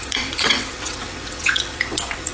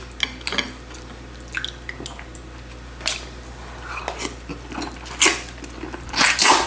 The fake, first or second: first